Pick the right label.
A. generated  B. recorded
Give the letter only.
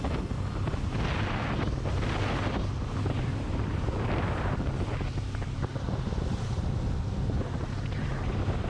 B